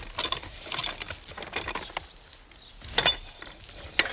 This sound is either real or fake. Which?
real